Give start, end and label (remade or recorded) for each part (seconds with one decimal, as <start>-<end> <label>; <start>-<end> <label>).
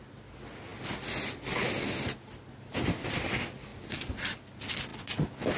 0.0-5.6 recorded